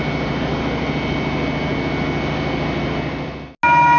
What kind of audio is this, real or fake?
real